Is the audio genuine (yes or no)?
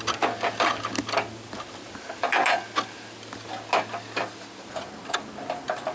yes